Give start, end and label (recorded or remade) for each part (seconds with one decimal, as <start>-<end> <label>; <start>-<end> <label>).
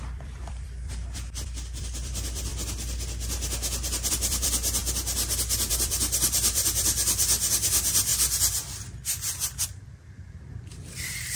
0.0-2.5 remade; 2.5-4.1 recorded; 4.1-4.8 remade; 4.8-5.7 recorded; 5.7-8.1 remade; 8.1-9.8 recorded; 9.8-11.4 remade